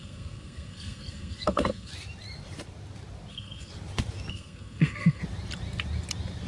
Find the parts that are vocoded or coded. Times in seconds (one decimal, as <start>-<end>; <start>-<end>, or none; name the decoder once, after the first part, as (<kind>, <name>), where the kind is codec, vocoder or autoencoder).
0.0-1.9 (codec, SNAC); 3.3-3.7; 4.3-5.2